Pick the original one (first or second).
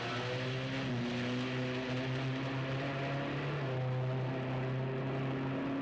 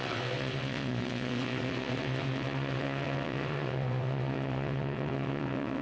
first